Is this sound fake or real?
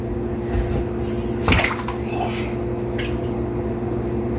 real